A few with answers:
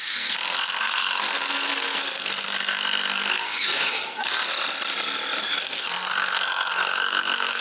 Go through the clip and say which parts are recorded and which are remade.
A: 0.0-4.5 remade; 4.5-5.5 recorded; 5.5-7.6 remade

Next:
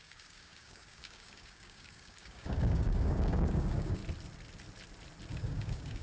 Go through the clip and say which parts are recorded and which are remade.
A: 0.0-4.0 remade; 4.0-5.3 recorded; 5.3-6.0 remade

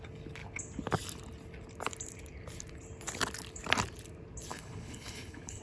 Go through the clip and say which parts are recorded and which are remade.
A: 0.0-4.5 recorded; 4.5-5.6 remade

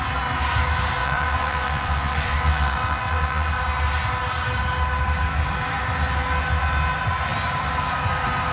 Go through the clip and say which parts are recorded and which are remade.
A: 0.0-1.0 recorded; 1.0-3.5 remade; 3.5-8.5 recorded

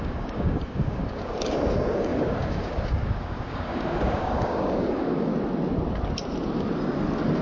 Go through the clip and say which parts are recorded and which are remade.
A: 0.0-5.3 remade; 5.3-7.4 recorded

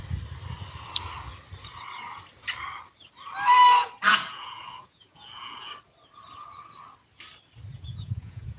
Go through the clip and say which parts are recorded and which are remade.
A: 0.0-4.1 recorded; 4.1-5.7 remade; 5.7-7.7 recorded; 7.7-8.6 remade